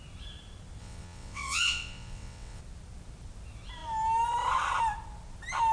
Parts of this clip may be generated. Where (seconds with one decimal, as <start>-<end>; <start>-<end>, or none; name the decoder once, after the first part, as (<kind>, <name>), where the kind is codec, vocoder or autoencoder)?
0.8-2.6 (vocoder, WaveNeXt)